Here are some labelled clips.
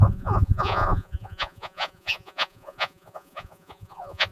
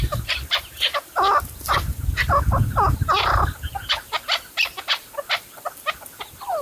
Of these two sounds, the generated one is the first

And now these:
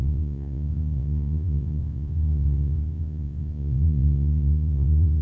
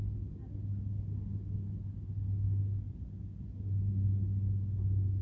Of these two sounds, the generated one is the first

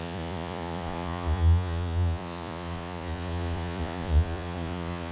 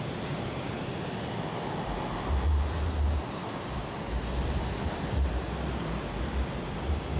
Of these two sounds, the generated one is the first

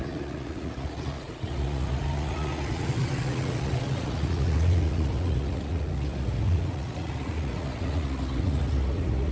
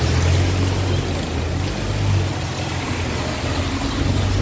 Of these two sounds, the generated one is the first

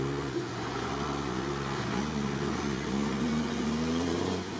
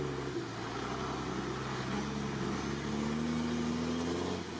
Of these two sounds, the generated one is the first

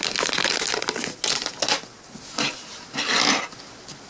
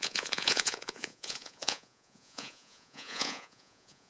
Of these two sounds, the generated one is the second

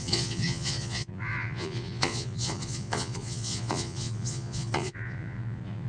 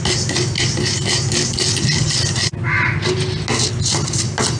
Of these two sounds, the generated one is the first